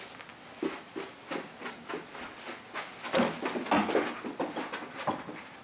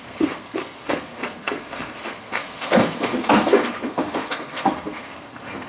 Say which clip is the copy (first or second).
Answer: second